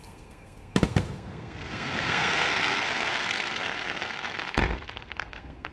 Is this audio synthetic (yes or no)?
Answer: yes